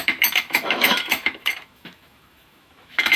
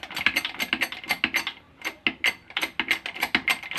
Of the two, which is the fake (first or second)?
first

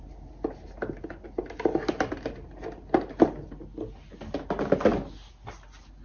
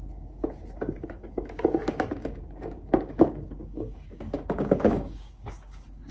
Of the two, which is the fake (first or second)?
second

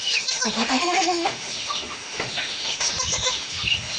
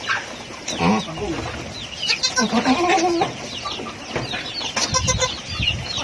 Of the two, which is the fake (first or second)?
first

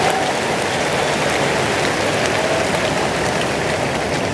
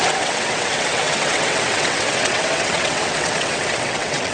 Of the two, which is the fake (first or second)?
second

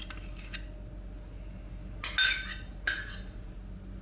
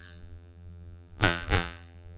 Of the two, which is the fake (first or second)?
second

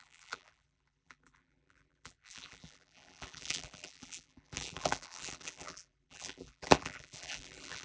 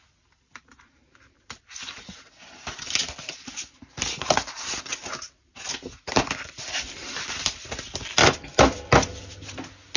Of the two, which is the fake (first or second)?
first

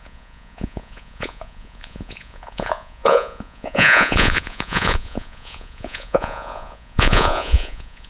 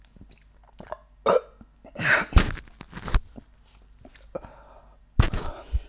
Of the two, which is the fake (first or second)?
first